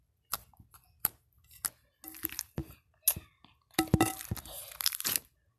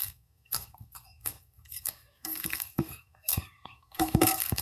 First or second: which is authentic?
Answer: first